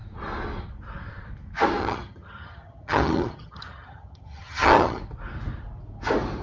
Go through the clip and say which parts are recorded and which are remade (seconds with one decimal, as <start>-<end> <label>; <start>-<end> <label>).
0.0-1.8 recorded; 1.8-5.0 remade; 5.0-6.4 recorded